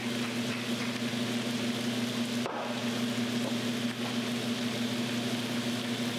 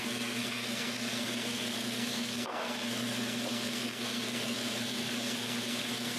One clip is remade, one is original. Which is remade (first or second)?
second